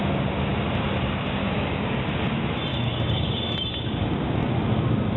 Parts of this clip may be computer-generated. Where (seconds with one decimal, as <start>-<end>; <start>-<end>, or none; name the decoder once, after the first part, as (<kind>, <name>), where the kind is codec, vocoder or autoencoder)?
1.4-2.0 (codec, DAC); 2.7-4.5